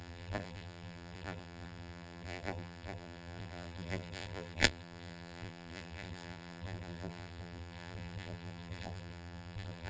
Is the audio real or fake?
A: fake